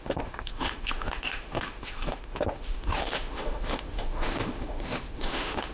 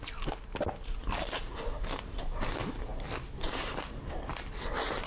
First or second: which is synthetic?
first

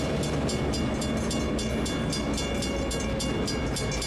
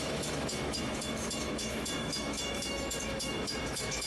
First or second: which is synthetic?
second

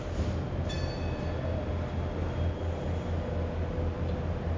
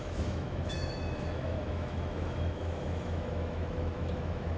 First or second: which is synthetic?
second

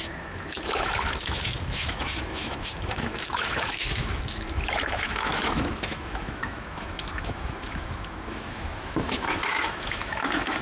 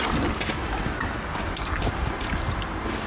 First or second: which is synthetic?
first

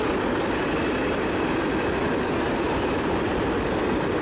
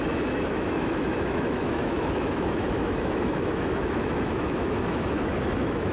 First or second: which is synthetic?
second